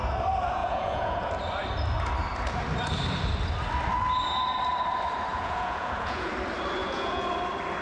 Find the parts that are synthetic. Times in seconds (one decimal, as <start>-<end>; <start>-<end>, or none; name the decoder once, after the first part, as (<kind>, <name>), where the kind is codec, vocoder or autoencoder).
0.6-1.3 (vocoder, Vocos); 5.3-6.3; 6.8-7.3